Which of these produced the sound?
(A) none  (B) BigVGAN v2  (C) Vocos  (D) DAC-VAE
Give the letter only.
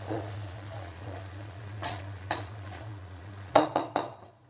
C